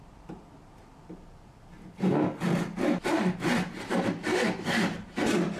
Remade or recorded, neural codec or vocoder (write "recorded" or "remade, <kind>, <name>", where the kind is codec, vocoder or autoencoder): recorded